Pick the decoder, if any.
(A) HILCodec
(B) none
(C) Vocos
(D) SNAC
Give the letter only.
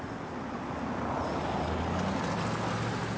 B